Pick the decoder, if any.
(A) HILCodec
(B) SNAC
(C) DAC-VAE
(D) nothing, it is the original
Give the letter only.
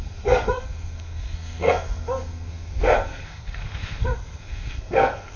B